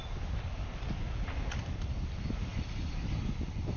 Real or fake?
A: real